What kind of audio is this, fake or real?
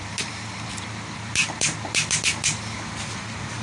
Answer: fake